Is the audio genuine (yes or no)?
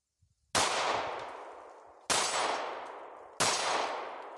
yes